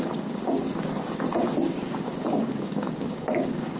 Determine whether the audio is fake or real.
fake